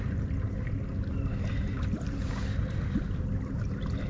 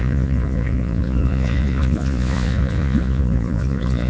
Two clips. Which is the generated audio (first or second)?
second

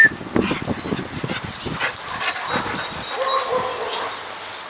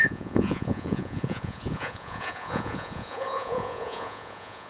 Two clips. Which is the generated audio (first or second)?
second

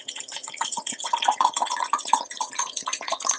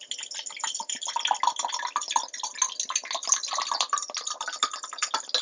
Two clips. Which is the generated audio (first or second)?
first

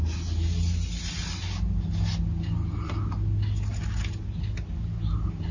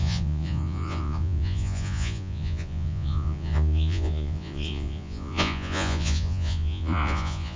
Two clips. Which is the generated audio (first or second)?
second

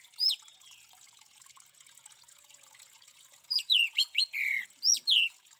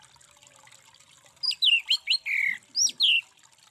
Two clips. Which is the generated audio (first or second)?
first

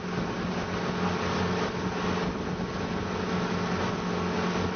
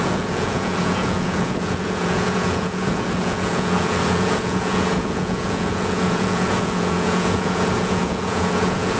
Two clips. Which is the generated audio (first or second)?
second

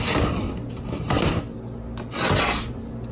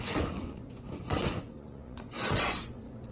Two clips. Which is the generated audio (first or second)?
second